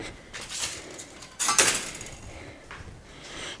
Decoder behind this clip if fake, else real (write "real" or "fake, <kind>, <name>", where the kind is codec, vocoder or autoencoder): real